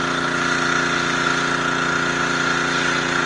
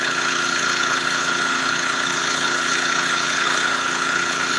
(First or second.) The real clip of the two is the first